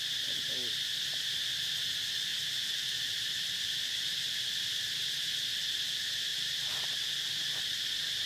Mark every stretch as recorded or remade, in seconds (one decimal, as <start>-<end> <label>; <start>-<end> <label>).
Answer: 0.0-2.3 recorded; 2.3-5.5 remade; 5.5-6.3 recorded; 6.3-7.0 remade; 7.0-8.3 recorded